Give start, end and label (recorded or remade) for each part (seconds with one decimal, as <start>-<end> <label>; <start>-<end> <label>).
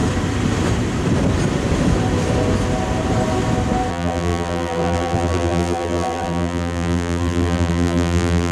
0.0-3.9 recorded; 3.9-8.5 remade